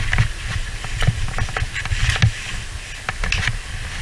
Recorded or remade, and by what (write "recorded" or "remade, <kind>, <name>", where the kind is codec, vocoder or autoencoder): recorded